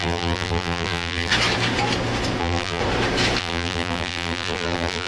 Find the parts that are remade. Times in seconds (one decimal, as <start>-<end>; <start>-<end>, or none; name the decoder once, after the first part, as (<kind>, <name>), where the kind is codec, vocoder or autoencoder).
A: 0.0-1.3 (vocoder, BigVGAN v2); 2.4-2.8; 3.4-5.1